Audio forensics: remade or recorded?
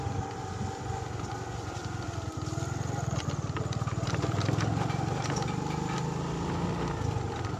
recorded